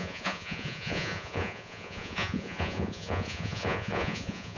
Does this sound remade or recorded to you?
remade